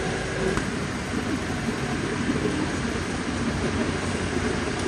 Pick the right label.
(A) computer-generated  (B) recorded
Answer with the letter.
B